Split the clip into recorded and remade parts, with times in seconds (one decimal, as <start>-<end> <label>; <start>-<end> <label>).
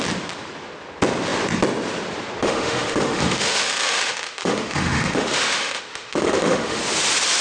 0.0-2.4 recorded; 2.4-6.8 remade; 6.8-7.4 recorded